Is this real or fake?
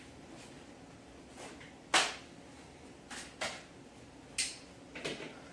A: real